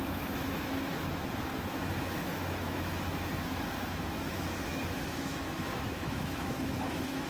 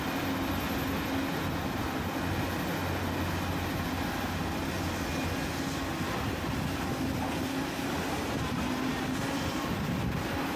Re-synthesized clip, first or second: first